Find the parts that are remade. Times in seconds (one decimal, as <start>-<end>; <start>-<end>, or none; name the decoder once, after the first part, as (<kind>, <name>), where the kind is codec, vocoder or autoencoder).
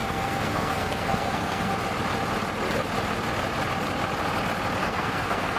0.0-1.7 (codec, SNAC); 4.8-5.6